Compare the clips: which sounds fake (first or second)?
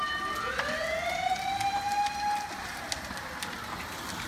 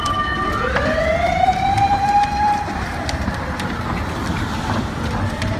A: second